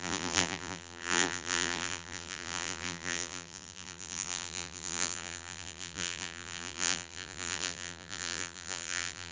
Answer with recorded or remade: remade